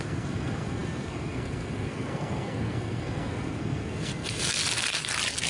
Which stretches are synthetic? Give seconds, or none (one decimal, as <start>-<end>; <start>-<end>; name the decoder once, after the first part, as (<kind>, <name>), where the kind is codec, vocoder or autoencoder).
0.0-4.6 (codec, SNAC)

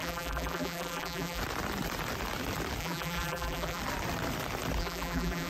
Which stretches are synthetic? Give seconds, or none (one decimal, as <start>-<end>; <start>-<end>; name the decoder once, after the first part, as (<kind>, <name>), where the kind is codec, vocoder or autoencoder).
0.0-1.4 (vocoder, BigVGAN v2); 2.8-3.8; 4.8-5.5

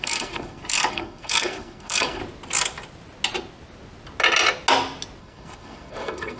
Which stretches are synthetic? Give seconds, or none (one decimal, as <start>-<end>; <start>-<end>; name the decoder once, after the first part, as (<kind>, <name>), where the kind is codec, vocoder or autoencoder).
0.0-2.2 (codec, SNAC); 5.2-6.4